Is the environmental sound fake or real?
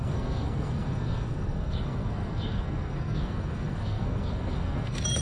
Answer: fake